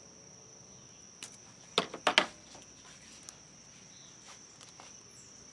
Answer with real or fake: real